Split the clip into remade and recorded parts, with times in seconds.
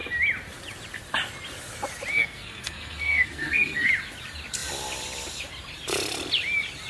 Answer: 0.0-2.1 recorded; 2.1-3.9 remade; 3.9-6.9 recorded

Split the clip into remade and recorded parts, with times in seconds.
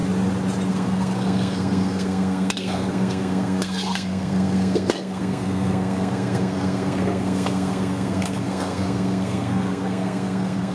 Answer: 0.0-0.7 recorded; 0.7-10.7 remade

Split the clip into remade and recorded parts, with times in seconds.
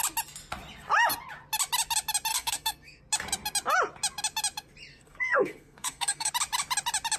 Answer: 0.0-2.3 recorded; 2.3-3.0 remade; 3.0-4.9 recorded; 4.9-6.3 remade; 6.3-7.2 recorded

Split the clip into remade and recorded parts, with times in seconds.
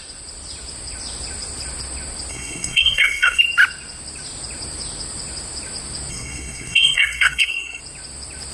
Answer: 0.0-2.3 recorded; 2.3-3.4 remade; 3.4-6.1 recorded; 6.1-7.8 remade; 7.8-8.5 recorded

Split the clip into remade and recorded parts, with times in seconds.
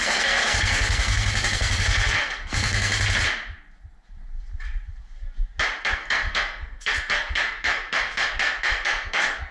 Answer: 0.0-2.9 remade; 2.9-5.8 recorded; 5.8-9.5 remade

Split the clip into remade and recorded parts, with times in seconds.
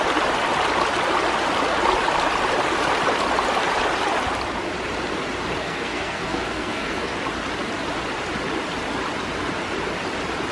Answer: 0.0-5.6 recorded; 5.6-7.1 remade; 7.1-10.5 recorded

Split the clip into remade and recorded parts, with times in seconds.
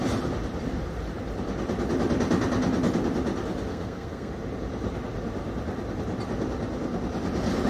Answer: 0.0-3.7 recorded; 3.7-4.3 remade; 4.3-7.7 recorded